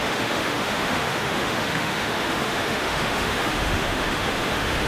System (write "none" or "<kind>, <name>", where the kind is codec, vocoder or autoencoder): autoencoder, DAC-VAE